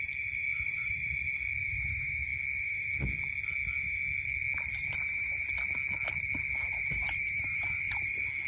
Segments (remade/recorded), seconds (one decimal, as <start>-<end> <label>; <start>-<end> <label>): 0.0-0.5 recorded; 0.5-1.1 remade; 1.1-8.5 recorded